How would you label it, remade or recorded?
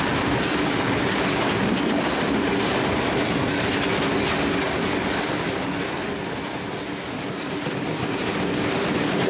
recorded